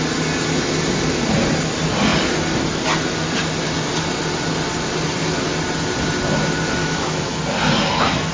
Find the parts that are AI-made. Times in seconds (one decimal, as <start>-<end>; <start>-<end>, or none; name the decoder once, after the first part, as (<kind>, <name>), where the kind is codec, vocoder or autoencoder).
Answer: 6.8-7.4 (autoencoder, DAC-VAE)